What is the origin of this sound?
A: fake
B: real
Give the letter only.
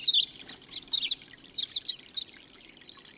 B